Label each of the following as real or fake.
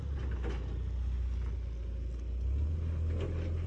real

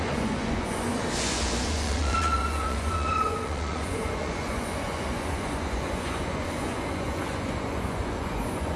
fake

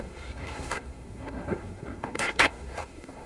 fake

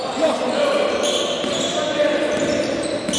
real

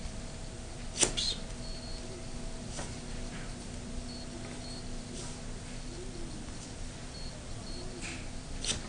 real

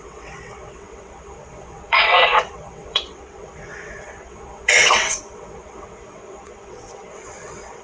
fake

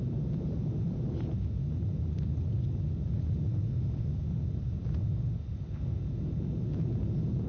real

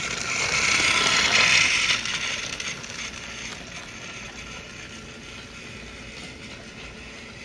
real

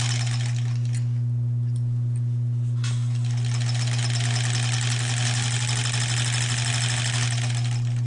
real